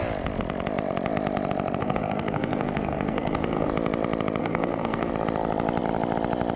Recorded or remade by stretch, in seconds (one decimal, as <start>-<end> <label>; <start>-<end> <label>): 0.0-1.8 recorded; 1.8-3.7 remade; 3.7-4.4 recorded; 4.4-5.1 remade; 5.1-6.6 recorded